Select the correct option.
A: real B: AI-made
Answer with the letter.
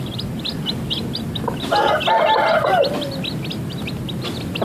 A